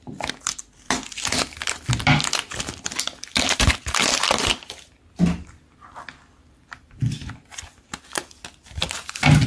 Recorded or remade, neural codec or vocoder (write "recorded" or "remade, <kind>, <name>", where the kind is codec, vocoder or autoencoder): recorded